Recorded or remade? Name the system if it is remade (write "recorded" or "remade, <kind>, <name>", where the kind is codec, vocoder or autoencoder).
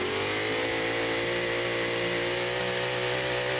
recorded